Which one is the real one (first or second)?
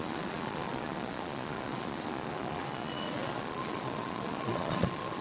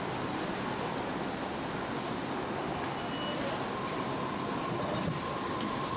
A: second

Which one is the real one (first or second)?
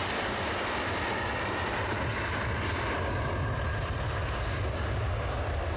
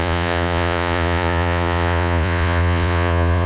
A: first